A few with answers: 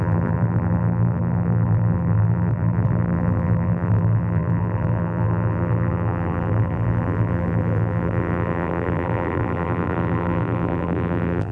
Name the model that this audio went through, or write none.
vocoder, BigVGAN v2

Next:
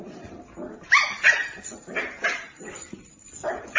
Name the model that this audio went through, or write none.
vocoder, BigVGAN v2